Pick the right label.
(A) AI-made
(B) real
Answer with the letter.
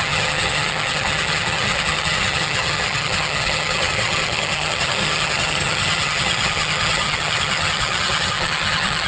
A